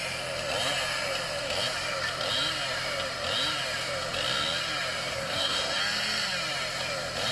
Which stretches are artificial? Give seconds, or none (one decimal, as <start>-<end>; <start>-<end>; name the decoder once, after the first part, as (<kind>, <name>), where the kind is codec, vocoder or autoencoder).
5.1-5.8 (codec, SNAC)

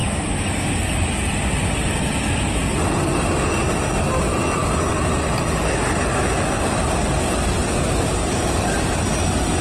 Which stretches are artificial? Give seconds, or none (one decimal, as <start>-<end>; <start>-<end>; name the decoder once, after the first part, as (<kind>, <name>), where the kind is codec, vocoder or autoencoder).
none

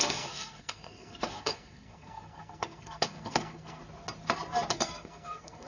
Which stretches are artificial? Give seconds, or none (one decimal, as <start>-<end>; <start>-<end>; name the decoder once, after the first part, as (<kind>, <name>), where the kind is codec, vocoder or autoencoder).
0.0-3.8 (codec, SNAC); 4.7-5.7

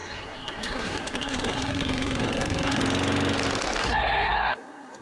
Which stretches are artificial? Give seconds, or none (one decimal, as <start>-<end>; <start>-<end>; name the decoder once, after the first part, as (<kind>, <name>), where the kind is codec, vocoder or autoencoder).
0.0-2.8 (codec, SNAC); 3.8-5.0

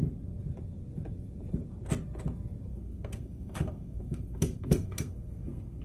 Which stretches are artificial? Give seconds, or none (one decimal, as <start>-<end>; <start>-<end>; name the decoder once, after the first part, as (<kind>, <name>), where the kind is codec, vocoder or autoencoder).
2.7-5.8 (codec, SNAC)